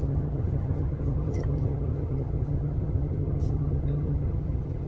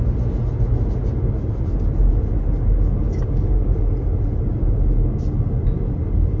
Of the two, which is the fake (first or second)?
first